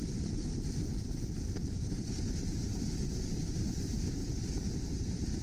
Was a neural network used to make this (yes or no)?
yes